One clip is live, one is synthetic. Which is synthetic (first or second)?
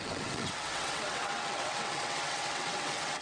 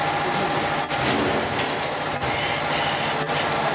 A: first